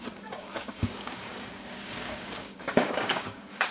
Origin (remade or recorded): remade